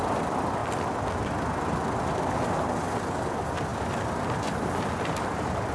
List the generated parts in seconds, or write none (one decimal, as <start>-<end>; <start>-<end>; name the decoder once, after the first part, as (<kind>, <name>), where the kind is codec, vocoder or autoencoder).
none